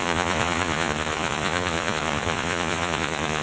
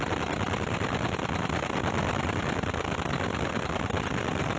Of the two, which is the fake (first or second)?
first